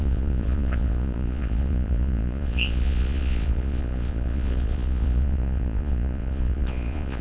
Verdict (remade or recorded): remade